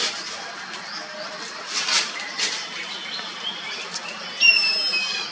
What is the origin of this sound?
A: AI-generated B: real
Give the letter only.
B